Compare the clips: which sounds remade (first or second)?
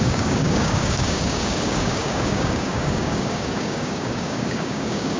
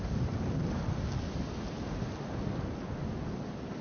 first